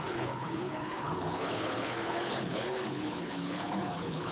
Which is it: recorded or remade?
remade